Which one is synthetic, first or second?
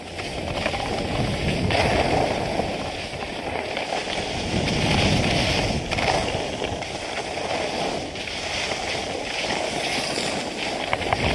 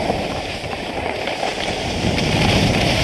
second